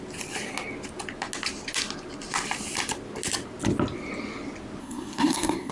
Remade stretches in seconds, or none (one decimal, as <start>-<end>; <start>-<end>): 4.8-5.7